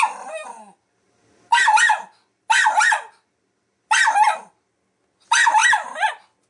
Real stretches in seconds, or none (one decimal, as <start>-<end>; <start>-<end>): 0.0-6.5